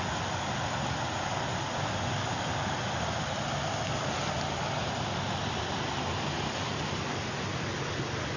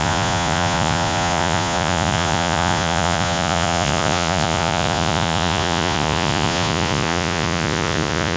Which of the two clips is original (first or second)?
first